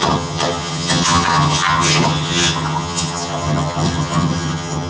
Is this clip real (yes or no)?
no